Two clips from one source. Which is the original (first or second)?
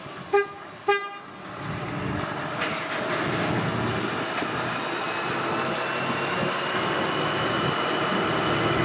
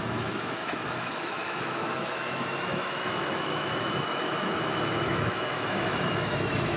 first